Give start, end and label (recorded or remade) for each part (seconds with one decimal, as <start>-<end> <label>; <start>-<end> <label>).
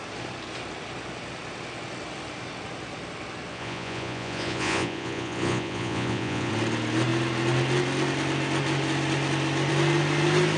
0.0-3.5 recorded; 3.5-6.5 remade; 6.5-10.6 recorded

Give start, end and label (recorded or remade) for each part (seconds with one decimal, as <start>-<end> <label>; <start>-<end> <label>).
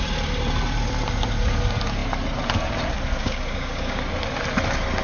0.0-3.2 recorded; 3.2-4.0 remade; 4.0-5.0 recorded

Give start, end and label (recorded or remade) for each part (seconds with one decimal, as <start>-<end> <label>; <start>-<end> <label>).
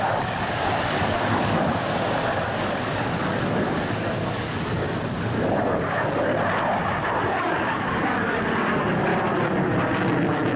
0.0-6.3 remade; 6.3-7.2 recorded; 7.2-9.1 remade; 9.1-10.6 recorded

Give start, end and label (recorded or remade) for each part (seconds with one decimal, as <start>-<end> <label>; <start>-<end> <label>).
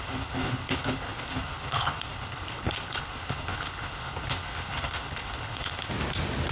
0.0-5.9 remade; 5.9-6.5 recorded